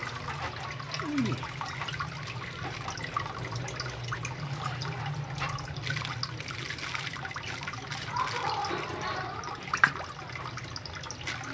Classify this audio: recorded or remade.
recorded